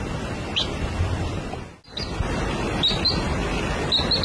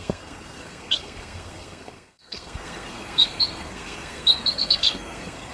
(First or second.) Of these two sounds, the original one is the first